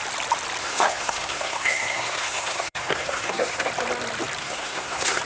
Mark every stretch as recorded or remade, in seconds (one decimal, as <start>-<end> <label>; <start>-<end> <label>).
0.0-0.6 recorded; 0.6-3.7 remade; 3.7-4.4 recorded; 4.4-5.2 remade